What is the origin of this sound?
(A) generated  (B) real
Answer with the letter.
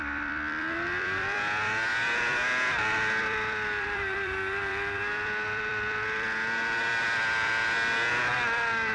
A